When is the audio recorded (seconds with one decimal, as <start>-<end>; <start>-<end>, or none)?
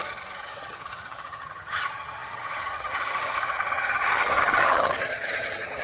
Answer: none